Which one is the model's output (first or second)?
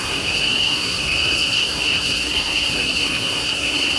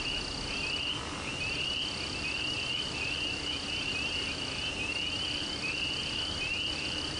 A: first